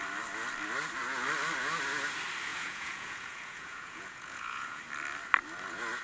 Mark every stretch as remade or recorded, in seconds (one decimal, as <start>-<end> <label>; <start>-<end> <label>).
0.0-2.5 recorded; 2.5-4.8 remade; 4.8-6.0 recorded